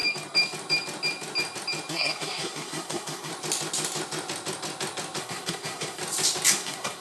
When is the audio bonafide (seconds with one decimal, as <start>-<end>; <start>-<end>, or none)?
0.0-1.9; 3.3-5.2; 6.0-6.5